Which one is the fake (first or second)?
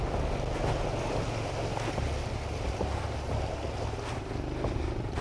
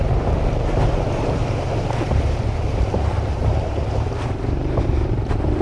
second